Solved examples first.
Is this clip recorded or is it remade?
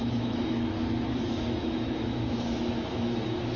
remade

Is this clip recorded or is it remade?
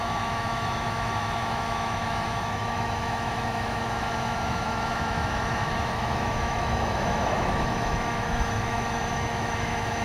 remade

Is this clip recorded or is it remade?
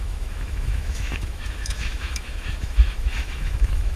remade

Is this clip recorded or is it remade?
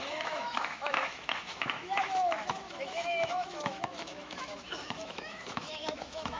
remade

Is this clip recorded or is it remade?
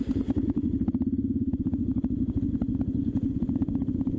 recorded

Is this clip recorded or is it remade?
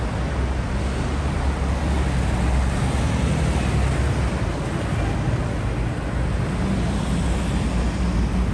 recorded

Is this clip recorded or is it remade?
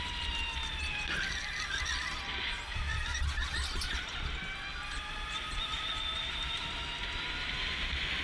recorded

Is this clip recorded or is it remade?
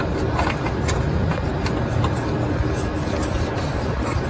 recorded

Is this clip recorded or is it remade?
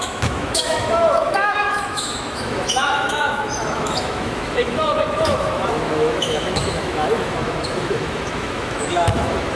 remade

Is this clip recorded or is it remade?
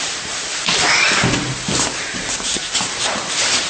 recorded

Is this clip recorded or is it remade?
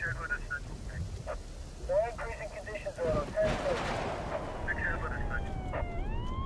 recorded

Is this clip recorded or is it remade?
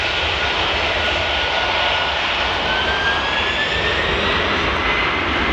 recorded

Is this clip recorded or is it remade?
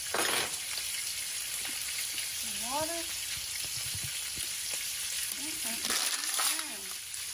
recorded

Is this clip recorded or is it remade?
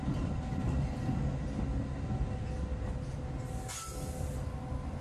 recorded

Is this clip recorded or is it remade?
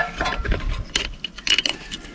recorded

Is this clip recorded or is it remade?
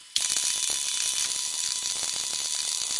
recorded